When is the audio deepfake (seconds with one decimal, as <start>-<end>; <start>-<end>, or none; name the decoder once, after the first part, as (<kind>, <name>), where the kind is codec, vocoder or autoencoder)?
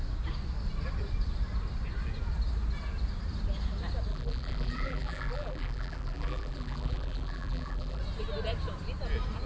4.1-8.0 (vocoder, BigVGAN v2)